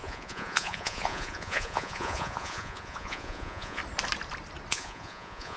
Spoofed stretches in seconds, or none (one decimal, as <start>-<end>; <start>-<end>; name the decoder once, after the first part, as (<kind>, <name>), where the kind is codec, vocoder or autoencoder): 0.0-3.8 (vocoder, Vocos); 4.7-5.6